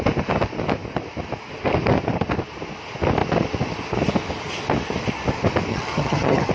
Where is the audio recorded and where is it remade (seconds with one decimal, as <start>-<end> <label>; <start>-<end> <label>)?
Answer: 0.0-5.7 recorded; 5.7-6.5 remade